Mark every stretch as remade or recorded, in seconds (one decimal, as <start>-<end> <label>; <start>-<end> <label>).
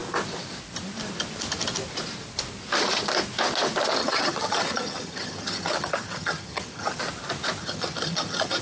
0.0-4.0 recorded; 4.0-7.0 remade; 7.0-7.6 recorded; 7.6-8.6 remade